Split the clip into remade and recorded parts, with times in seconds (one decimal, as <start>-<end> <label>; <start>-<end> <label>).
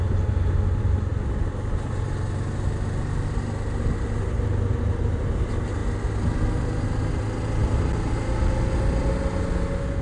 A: 0.0-10.0 recorded